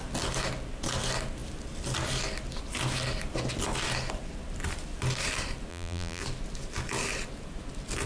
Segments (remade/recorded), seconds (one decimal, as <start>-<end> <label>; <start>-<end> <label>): 0.0-5.7 recorded; 5.7-6.2 remade; 6.2-8.1 recorded